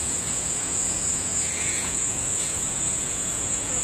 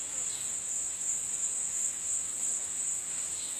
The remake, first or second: first